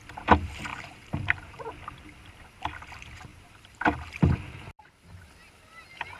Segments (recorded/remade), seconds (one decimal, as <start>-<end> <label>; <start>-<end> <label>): 0.0-0.7 recorded; 0.7-1.7 remade; 1.7-3.3 recorded; 3.3-4.6 remade; 4.6-6.2 recorded